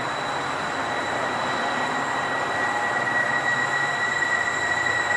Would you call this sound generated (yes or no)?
no